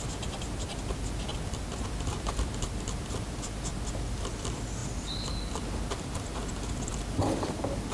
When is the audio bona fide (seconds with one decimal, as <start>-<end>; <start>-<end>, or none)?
0.0-1.3; 2.7-7.9